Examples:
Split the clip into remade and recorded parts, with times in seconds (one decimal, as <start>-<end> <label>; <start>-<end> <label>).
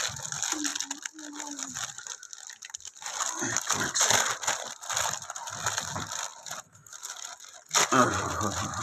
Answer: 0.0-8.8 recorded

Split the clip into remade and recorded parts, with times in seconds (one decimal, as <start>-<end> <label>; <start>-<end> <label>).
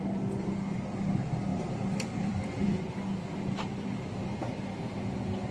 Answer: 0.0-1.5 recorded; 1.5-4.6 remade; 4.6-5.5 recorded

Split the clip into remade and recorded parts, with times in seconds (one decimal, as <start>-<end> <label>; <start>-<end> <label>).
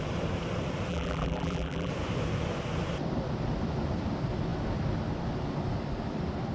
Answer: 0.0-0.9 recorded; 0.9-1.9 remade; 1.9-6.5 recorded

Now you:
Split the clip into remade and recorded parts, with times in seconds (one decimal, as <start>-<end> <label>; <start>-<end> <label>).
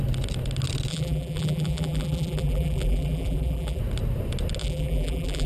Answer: 0.0-0.9 recorded; 0.9-3.8 remade; 3.8-4.6 recorded; 4.6-5.5 remade